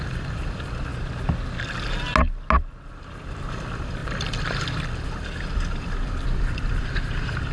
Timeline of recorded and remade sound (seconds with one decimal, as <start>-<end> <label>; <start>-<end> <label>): 0.0-0.9 remade; 0.9-2.9 recorded; 2.9-7.5 remade